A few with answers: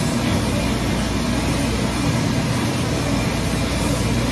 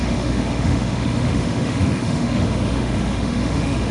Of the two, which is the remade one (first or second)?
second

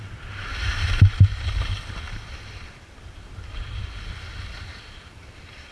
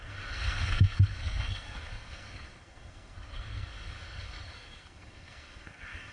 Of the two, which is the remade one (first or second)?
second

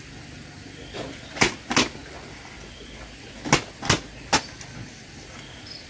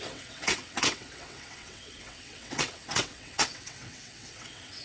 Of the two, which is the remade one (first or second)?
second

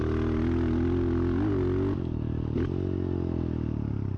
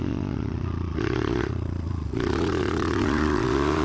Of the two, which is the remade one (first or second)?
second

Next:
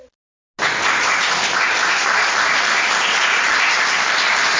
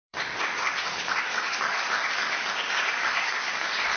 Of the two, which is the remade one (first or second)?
second